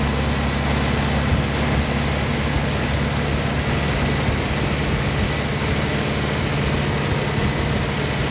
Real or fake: real